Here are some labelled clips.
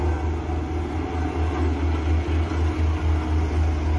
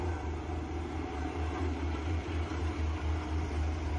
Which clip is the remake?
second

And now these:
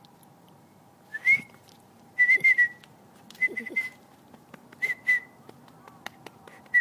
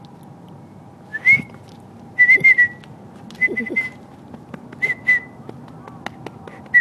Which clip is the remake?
first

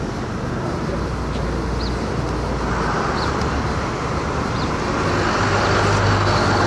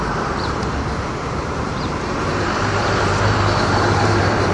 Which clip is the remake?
second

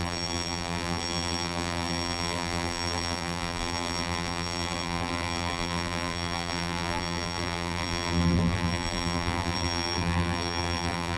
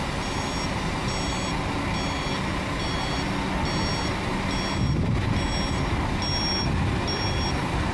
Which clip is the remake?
first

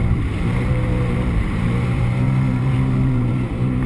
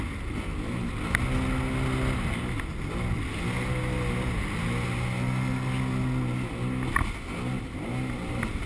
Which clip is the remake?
first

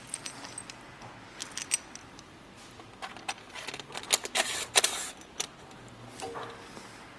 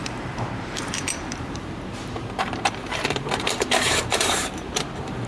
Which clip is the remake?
second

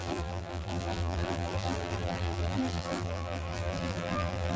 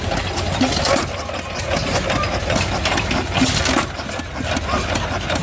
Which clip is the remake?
first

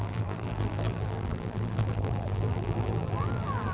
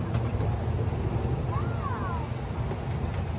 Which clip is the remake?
first